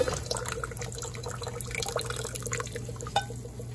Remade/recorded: recorded